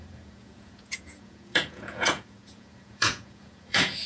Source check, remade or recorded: remade